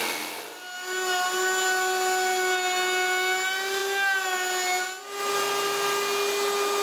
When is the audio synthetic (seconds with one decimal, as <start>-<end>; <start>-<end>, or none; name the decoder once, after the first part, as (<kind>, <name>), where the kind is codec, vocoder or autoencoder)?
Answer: none